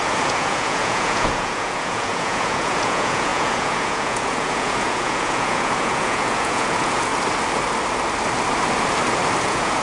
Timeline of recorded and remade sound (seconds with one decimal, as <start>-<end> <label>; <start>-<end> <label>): 0.0-7.1 remade; 7.1-9.4 recorded; 9.4-9.8 remade